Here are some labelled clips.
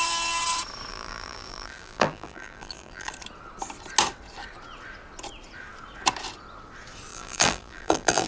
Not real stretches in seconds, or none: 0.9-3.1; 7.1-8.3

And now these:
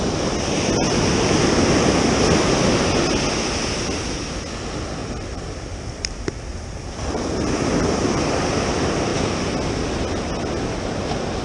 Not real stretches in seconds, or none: 5.0-8.2

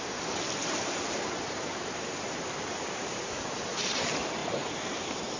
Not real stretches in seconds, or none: 0.6-3.8; 4.4-5.4

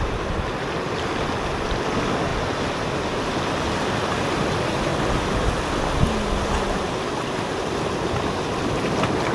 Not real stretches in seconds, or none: none